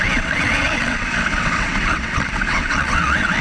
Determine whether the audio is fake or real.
fake